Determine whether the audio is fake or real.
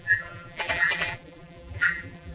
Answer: fake